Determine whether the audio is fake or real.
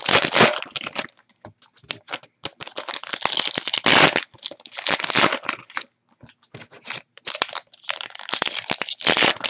real